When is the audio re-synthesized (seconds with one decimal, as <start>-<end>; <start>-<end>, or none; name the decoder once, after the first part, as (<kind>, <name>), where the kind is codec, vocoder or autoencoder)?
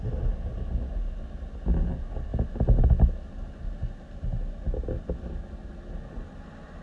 none